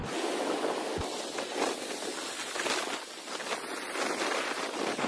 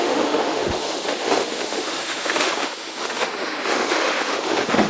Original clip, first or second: first